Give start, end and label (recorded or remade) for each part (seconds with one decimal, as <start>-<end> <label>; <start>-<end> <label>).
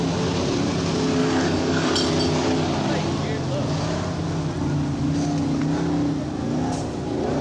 0.0-1.2 recorded; 1.2-1.9 remade; 1.9-7.4 recorded